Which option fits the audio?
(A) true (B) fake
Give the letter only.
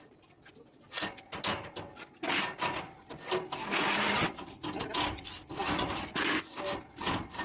A